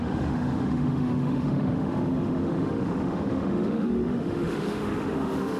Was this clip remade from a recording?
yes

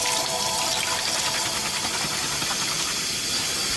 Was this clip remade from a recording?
no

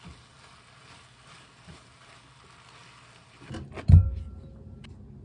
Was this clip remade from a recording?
no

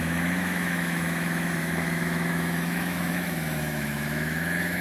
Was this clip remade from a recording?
yes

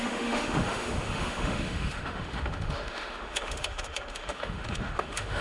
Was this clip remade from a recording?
yes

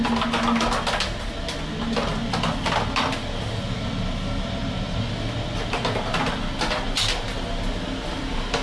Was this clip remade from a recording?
no